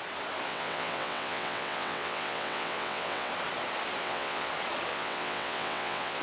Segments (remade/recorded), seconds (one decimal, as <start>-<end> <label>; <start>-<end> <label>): 0.0-0.5 recorded; 0.5-3.3 remade; 3.3-4.0 recorded; 4.0-4.5 remade; 4.5-4.9 recorded; 4.9-6.2 remade